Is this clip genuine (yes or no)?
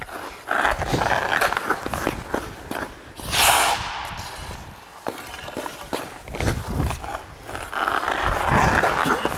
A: yes